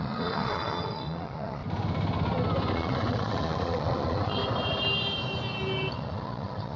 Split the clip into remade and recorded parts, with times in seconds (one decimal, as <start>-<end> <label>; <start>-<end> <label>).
0.0-1.6 remade; 1.6-2.7 recorded; 2.7-4.4 remade; 4.4-5.9 recorded; 5.9-6.8 remade